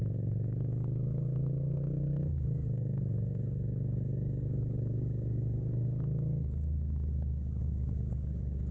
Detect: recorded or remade remade